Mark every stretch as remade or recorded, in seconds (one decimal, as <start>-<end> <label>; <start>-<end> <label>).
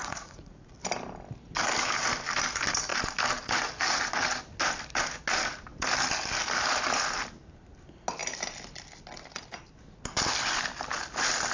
0.0-0.7 remade; 0.7-11.5 recorded